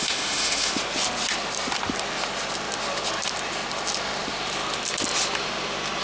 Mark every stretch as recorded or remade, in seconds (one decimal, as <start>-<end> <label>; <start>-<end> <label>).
0.0-0.7 remade; 0.7-6.0 recorded